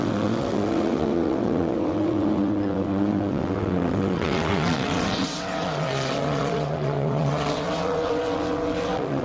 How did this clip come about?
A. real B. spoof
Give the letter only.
B